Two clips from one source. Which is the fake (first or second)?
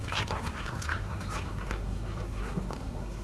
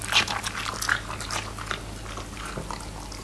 first